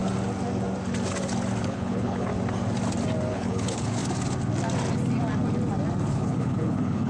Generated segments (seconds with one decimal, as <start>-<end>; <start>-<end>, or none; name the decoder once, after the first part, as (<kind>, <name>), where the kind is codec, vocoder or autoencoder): 1.6-2.3 (codec, HILCodec); 3.3-4.0; 6.1-7.1